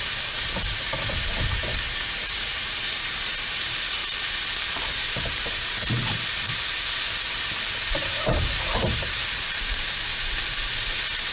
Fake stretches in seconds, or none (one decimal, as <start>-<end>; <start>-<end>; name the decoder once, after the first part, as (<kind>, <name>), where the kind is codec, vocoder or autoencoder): 0.0-4.0 (vocoder, BigVGAN v2); 7.9-11.3